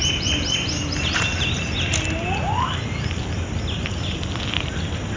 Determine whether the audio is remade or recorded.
recorded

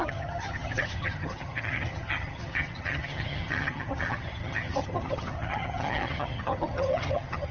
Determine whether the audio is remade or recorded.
remade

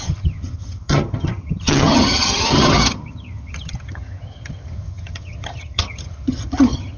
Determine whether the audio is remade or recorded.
remade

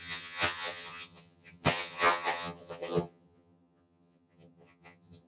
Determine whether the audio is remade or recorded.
remade